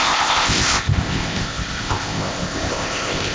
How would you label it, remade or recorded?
remade